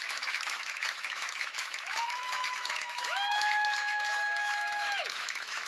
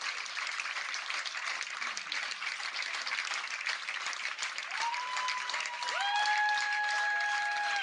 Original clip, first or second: second